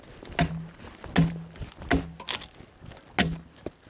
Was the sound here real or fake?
real